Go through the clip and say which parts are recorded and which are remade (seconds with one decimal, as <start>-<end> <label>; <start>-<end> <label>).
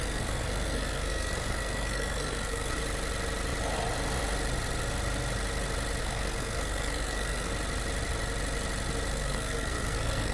0.0-2.8 remade; 2.8-6.0 recorded; 6.0-7.5 remade; 7.5-9.1 recorded; 9.1-10.3 remade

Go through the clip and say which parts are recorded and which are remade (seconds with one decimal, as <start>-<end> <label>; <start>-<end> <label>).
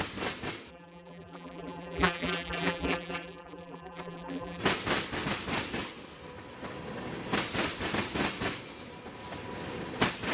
0.0-0.7 recorded; 0.7-4.6 remade; 4.6-10.3 recorded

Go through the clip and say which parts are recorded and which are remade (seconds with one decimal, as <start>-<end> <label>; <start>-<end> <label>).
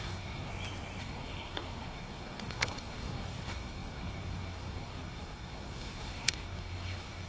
0.0-0.5 remade; 0.5-1.0 recorded; 1.0-7.3 remade